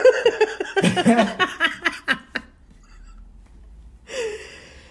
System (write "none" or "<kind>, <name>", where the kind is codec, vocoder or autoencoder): vocoder, BigVGAN v2